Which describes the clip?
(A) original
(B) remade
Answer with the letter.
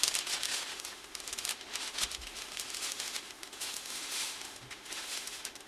B